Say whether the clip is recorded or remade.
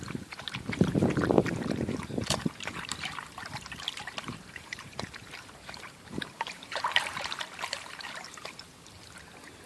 remade